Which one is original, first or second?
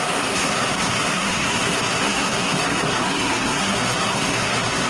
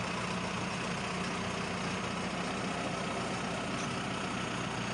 second